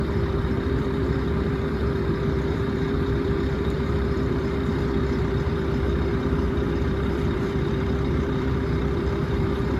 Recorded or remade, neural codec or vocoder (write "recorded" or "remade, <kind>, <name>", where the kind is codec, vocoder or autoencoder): remade, vocoder, BigVGAN v2